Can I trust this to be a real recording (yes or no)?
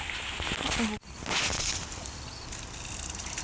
yes